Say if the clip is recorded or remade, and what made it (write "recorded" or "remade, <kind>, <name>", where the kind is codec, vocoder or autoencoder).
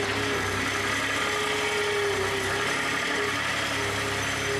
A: recorded